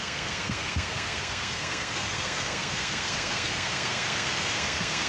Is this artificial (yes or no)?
yes